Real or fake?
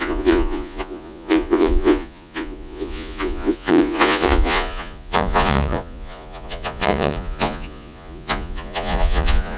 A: fake